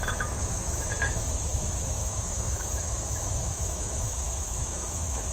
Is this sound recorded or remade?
remade